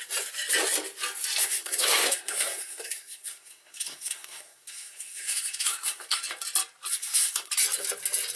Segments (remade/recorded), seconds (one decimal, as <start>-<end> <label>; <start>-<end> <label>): 0.0-1.4 recorded; 1.4-6.2 remade; 6.2-6.9 recorded; 6.9-7.5 remade; 7.5-8.4 recorded